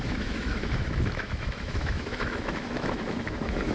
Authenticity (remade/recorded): remade